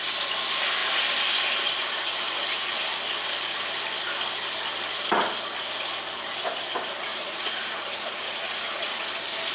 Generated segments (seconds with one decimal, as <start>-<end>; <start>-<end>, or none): 7.1-9.1